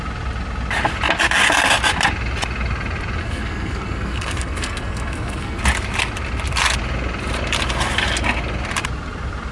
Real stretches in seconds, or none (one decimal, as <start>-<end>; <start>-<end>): 0.0-3.2; 5.6-9.5